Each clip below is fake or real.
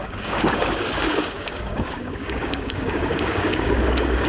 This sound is fake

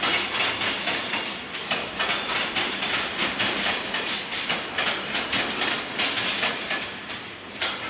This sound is real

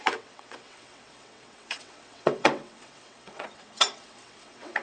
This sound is fake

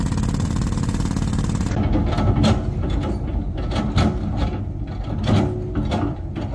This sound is real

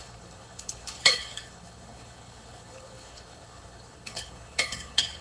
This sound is fake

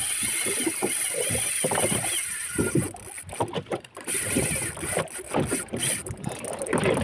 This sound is real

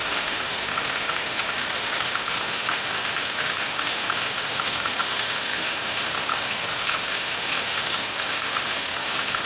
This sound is fake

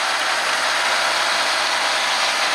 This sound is real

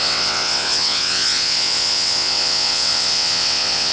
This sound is fake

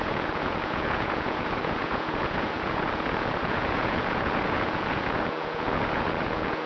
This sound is fake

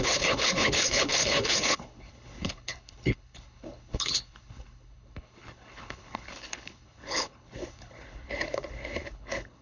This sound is fake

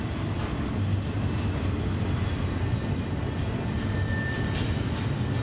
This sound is real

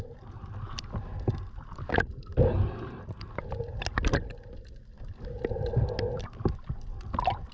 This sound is real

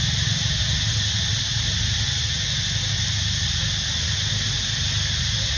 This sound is real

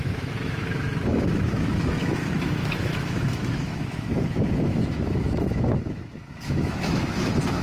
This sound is fake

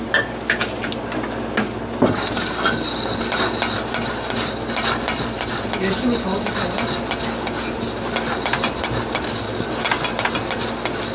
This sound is real